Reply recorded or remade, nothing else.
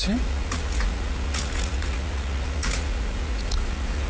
remade